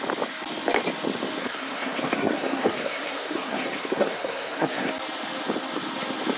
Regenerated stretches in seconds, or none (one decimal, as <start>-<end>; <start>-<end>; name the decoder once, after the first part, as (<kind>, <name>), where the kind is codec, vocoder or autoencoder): 1.4-4.9 (codec, SNAC)